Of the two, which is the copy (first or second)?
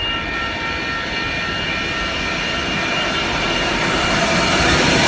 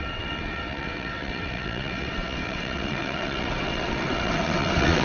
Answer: second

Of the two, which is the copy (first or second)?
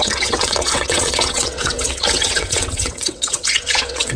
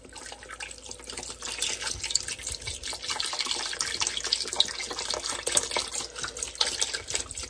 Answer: first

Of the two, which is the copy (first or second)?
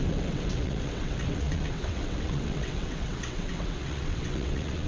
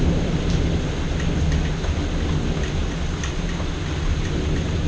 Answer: first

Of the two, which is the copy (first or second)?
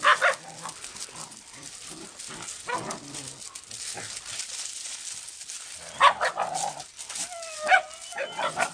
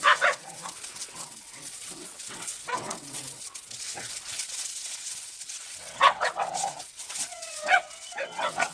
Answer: second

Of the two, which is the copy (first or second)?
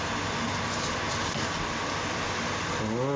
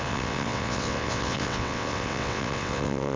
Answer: second